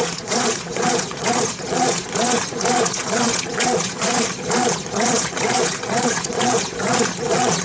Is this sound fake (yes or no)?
yes